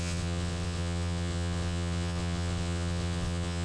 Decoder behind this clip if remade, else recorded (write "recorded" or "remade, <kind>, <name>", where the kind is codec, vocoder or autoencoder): remade, vocoder, WaveNeXt